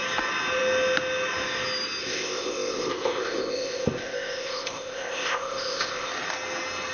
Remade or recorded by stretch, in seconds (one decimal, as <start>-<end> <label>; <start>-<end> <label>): 0.0-2.0 recorded; 2.0-6.1 remade; 6.1-6.9 recorded